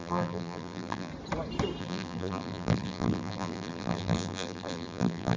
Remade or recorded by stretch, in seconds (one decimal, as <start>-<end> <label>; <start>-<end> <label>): 0.0-1.1 remade; 1.1-1.8 recorded; 1.8-5.4 remade